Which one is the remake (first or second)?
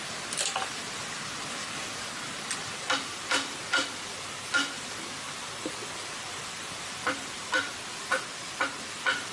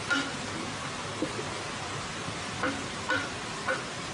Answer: first